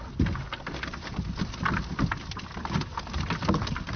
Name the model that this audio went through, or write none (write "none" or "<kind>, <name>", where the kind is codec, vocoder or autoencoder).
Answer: none